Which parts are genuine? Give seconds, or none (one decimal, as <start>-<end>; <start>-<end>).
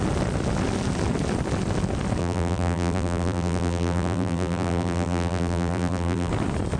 0.0-2.2; 6.3-6.8